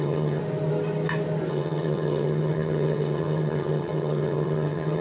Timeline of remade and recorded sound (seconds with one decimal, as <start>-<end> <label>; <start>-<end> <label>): 0.0-0.4 remade; 0.4-1.5 recorded; 1.5-5.0 remade